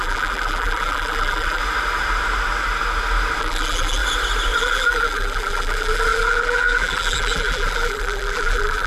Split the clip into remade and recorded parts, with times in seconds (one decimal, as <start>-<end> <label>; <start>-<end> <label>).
0.0-1.6 remade; 1.6-3.4 recorded; 3.4-4.0 remade; 4.0-4.6 recorded; 4.6-8.9 remade